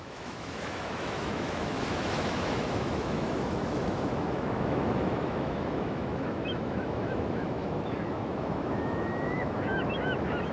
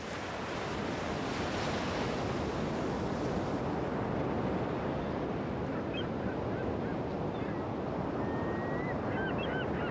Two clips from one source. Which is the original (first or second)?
second